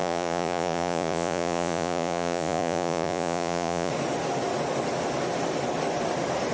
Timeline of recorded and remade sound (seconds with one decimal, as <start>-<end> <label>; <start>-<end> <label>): 0.0-3.9 remade; 3.9-6.5 recorded